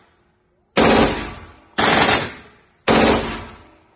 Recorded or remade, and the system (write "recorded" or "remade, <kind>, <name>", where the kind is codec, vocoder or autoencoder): recorded